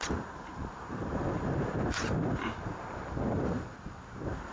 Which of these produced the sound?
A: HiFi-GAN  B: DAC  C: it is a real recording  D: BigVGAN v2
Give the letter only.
D